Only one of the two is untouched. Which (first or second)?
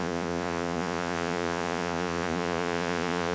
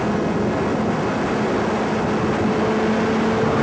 second